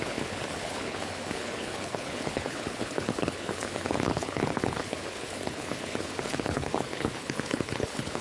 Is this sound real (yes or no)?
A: no